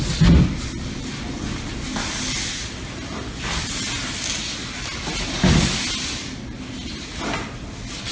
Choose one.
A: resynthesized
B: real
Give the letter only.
B